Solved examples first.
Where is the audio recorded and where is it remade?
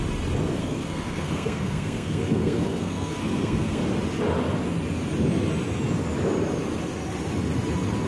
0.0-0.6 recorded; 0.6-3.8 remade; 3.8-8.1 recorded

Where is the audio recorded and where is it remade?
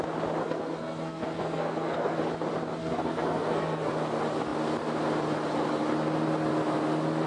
0.0-0.4 recorded; 0.4-2.2 remade; 2.2-2.8 recorded; 2.8-3.9 remade; 3.9-7.3 recorded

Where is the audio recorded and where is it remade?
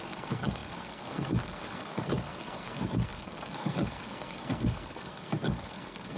0.0-6.2 remade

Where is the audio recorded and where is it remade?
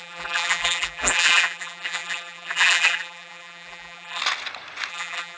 0.0-4.2 remade; 4.2-4.9 recorded; 4.9-5.4 remade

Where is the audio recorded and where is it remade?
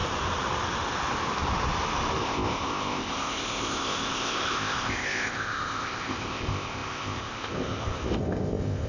0.0-2.2 recorded; 2.2-8.9 remade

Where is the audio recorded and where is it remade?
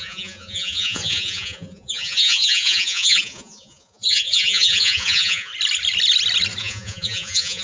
0.0-5.5 remade; 5.5-6.6 recorded; 6.6-7.6 remade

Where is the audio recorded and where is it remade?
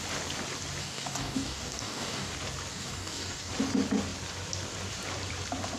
0.0-0.8 recorded; 0.8-2.3 remade; 2.3-2.7 recorded; 2.7-3.5 remade; 3.5-5.8 recorded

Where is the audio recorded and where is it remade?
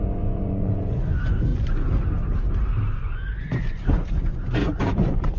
0.0-1.5 remade; 1.5-3.0 recorded; 3.0-5.4 remade